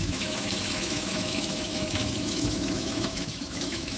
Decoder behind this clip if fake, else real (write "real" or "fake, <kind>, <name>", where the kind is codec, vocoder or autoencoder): fake, autoencoder, DAC-VAE